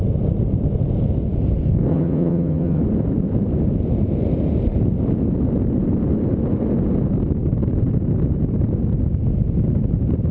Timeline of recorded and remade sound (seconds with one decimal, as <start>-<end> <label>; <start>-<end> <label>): 0.0-1.9 recorded; 1.9-2.8 remade; 2.8-10.3 recorded